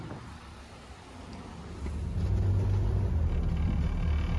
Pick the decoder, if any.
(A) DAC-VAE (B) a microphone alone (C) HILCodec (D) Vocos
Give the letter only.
B